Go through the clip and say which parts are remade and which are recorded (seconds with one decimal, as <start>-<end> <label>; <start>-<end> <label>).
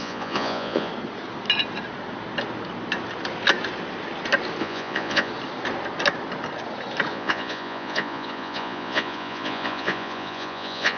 0.0-0.9 remade; 0.9-4.6 recorded; 4.6-5.3 remade; 5.3-7.1 recorded; 7.1-11.0 remade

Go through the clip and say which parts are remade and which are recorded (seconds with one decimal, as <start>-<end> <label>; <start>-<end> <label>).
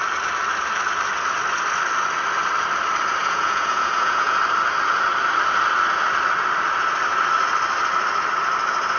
0.0-3.2 recorded; 3.2-4.4 remade; 4.4-9.0 recorded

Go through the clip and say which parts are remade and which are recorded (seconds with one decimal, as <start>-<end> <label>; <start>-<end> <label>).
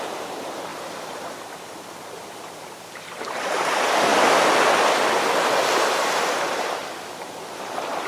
0.0-4.1 remade; 4.1-5.8 recorded; 5.8-6.8 remade; 6.8-7.4 recorded; 7.4-8.1 remade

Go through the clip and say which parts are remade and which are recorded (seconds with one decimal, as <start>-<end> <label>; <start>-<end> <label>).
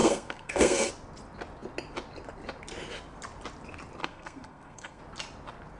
0.0-0.9 remade; 0.9-4.0 recorded; 4.0-5.0 remade; 5.0-5.8 recorded